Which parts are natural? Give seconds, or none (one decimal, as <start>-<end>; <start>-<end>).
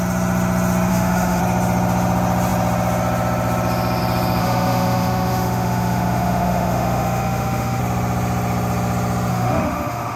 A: 0.0-0.9; 1.4-4.4; 7.8-9.3